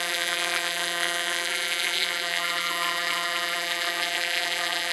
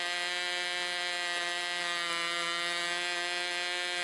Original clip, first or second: second